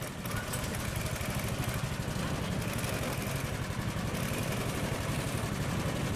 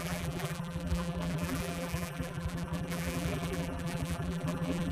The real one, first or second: first